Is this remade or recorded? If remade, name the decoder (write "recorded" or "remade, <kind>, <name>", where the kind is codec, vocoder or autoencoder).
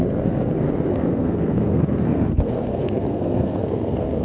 remade, codec, SNAC